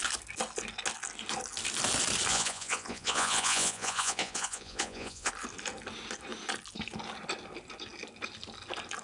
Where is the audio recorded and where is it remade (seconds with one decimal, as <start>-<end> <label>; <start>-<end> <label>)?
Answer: 0.0-2.3 recorded; 2.3-5.3 remade; 5.3-9.0 recorded